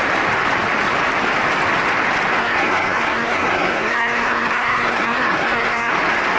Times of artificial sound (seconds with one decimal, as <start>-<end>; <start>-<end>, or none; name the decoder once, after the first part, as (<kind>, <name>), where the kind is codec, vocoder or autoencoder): 2.4-5.9 (codec, SNAC)